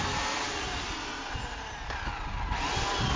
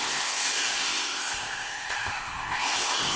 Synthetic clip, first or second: second